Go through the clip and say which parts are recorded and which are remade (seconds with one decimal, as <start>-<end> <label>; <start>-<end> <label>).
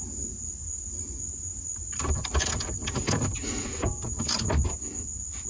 0.0-5.5 recorded